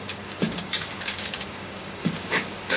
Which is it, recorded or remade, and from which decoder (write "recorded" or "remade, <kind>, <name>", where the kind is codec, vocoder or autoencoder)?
remade, codec, DAC